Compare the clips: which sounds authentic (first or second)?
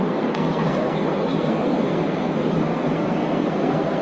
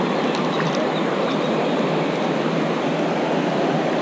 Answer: second